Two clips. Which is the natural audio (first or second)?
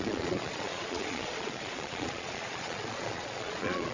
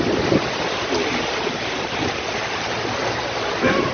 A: second